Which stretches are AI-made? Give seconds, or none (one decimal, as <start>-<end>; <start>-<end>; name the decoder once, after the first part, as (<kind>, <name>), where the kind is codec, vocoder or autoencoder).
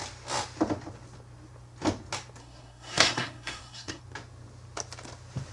2.4-4.0 (codec, SNAC)